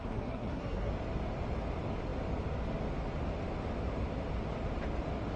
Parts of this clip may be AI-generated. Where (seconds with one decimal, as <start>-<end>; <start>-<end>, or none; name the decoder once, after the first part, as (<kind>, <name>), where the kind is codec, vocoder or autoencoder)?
0.0-0.9 (codec, SNAC)